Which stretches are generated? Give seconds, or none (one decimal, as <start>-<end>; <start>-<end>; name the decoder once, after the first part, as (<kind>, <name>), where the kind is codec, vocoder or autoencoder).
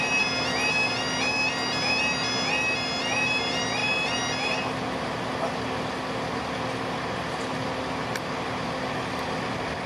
none